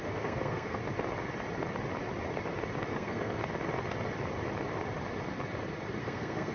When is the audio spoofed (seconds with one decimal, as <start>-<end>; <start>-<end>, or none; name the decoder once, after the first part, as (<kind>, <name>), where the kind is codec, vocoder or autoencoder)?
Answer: 0.0-0.8 (codec, SNAC); 2.9-3.4; 6.0-6.5